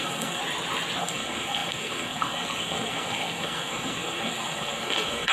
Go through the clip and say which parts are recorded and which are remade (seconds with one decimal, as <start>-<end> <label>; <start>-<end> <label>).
0.0-0.4 remade; 0.4-1.0 recorded; 1.0-5.3 remade

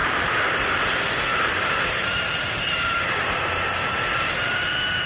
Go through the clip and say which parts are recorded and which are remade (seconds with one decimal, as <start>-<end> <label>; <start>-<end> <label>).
0.0-5.1 recorded

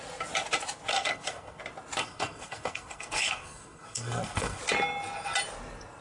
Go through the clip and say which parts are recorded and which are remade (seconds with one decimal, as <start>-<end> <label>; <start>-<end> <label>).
0.0-0.9 recorded; 0.9-1.6 remade; 1.6-2.0 recorded; 2.0-4.6 remade; 4.6-6.0 recorded

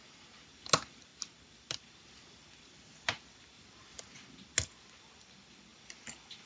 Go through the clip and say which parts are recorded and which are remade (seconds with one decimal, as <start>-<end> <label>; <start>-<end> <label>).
0.0-6.5 recorded

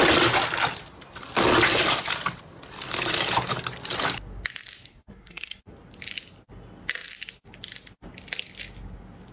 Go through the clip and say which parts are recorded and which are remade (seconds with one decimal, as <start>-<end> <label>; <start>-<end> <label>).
0.0-4.9 recorded; 4.9-5.6 remade; 5.6-9.3 recorded

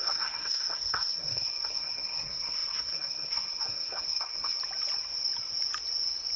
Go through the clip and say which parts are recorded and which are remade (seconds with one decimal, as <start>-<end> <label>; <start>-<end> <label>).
0.0-4.6 remade; 4.6-6.4 recorded

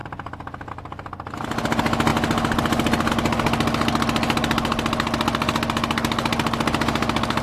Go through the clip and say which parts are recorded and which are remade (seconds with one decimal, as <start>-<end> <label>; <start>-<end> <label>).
0.0-7.4 recorded